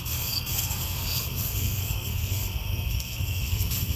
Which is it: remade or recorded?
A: remade